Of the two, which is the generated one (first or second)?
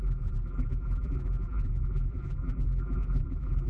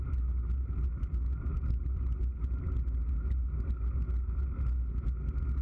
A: first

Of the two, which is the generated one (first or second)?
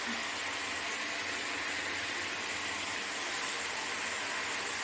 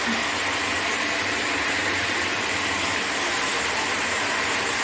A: second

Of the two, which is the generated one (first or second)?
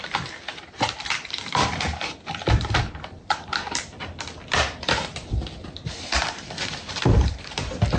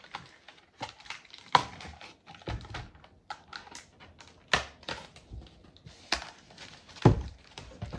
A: first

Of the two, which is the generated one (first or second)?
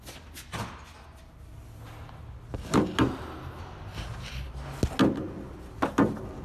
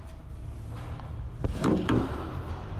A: second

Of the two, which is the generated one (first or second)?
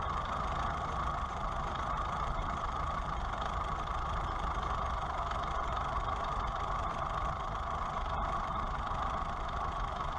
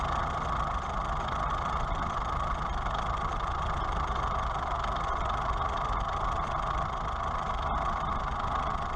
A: first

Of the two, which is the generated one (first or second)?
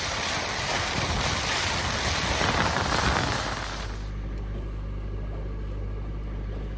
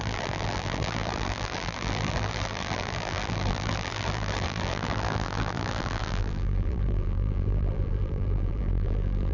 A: second